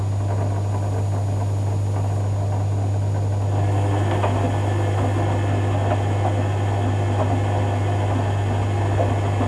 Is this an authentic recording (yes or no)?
yes